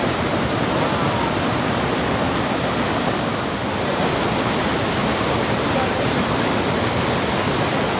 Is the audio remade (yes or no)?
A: no